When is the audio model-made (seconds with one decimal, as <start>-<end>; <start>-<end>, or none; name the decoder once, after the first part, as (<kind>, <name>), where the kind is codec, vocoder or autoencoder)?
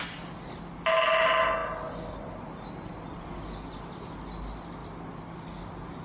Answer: none